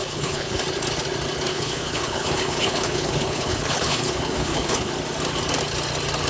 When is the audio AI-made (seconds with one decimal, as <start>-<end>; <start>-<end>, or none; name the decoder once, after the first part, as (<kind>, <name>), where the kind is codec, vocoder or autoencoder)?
0.0-0.6 (codec, HILCodec); 1.5-4.9